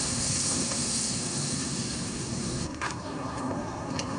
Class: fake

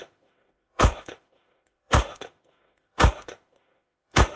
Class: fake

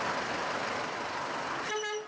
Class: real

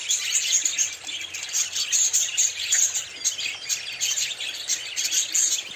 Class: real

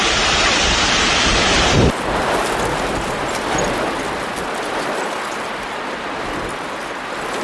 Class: real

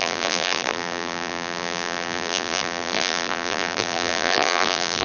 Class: fake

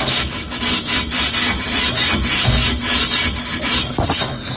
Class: real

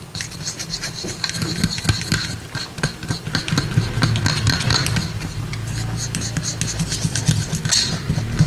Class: real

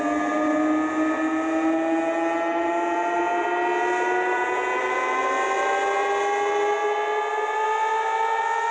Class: real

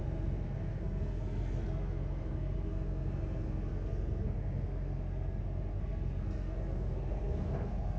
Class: fake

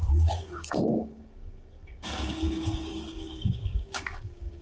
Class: fake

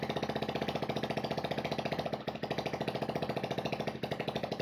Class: real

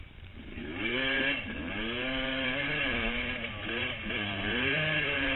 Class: fake